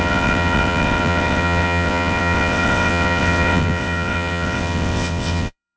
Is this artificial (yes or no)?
yes